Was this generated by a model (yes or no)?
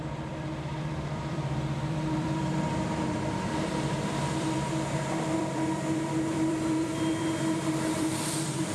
yes